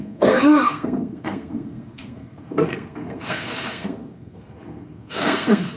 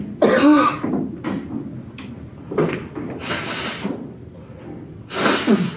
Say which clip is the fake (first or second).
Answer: first